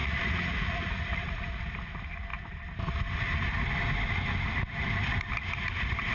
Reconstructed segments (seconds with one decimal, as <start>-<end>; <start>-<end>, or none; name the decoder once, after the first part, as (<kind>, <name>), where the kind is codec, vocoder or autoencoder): 0.0-1.6 (vocoder, Vocos)